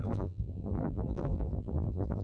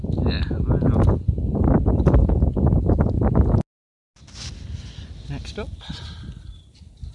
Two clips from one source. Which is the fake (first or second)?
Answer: first